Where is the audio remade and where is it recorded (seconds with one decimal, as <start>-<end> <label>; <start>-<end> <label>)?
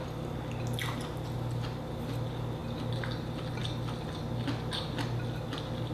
0.0-5.9 recorded